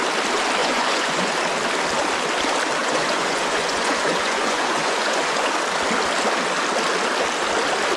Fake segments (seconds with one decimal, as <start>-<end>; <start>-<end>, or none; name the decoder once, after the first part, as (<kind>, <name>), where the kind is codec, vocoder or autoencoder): 0.6-1.3 (vocoder, Vocos); 2.8-5.5